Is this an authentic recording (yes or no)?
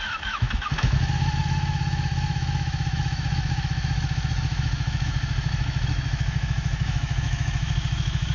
no